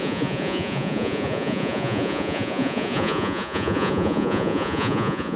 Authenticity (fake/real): fake